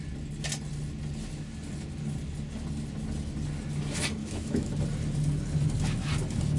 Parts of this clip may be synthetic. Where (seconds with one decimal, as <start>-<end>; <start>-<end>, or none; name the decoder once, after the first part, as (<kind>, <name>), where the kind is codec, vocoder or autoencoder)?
4.2-4.7 (autoencoder, DAC-VAE)